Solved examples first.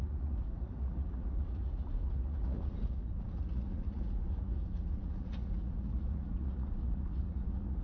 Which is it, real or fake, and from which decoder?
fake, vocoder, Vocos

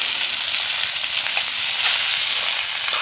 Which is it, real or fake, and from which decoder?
real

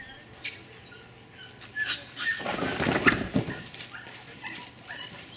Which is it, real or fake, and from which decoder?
real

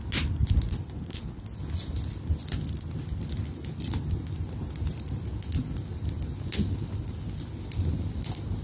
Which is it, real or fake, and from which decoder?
real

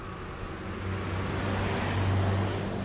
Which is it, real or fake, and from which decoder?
real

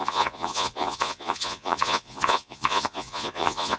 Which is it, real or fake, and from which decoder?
fake, vocoder, Vocos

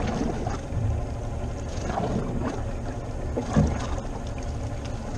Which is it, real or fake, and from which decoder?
real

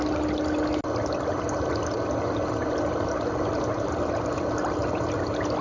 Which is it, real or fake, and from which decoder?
real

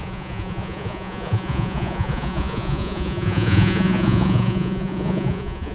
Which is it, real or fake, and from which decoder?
fake, vocoder, Vocos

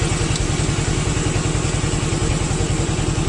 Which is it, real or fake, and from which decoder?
real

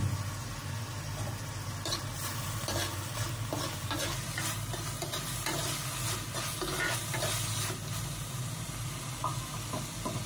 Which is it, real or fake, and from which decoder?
real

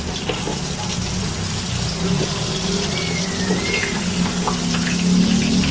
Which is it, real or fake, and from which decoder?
real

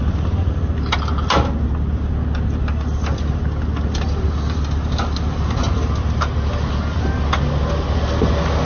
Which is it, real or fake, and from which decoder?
real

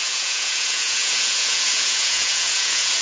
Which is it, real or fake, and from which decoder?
fake, vocoder, Vocos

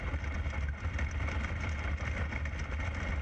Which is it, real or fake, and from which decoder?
real